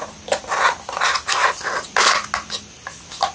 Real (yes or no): yes